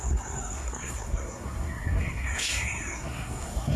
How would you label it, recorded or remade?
remade